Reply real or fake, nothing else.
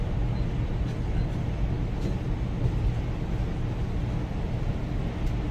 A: real